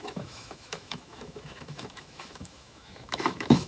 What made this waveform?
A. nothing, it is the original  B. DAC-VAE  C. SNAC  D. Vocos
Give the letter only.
B